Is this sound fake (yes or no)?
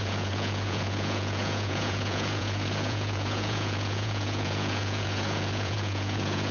yes